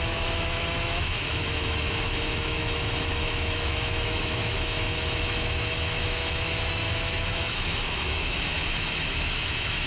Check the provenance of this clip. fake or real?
fake